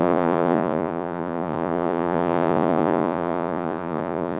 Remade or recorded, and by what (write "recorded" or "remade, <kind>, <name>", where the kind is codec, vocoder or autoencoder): remade, vocoder, Vocos